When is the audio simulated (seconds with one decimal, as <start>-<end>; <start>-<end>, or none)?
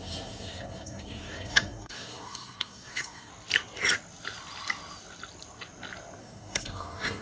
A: 0.0-3.3; 6.2-7.2